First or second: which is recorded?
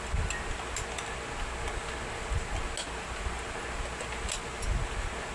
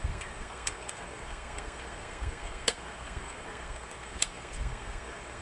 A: first